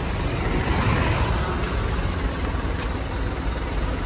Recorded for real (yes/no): yes